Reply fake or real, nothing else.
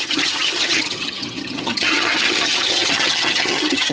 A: fake